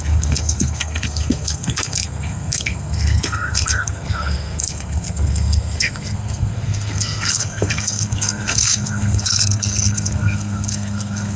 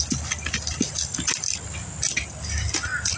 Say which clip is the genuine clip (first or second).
second